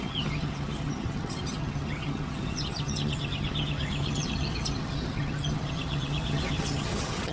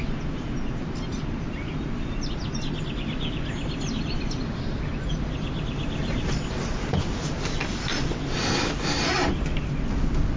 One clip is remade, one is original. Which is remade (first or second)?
first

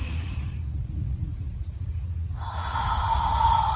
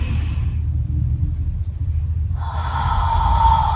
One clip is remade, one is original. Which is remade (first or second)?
first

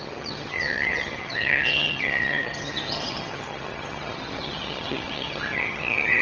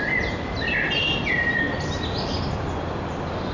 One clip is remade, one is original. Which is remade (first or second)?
first